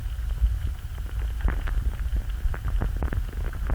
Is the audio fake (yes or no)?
no